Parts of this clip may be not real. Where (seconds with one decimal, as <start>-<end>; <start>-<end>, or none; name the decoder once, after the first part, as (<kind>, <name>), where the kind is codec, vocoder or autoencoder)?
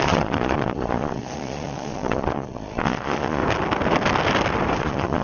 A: 0.0-3.4 (vocoder, Vocos); 4.8-5.2